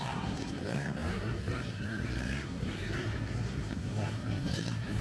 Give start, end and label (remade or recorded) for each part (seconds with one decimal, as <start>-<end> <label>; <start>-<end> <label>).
0.0-5.0 remade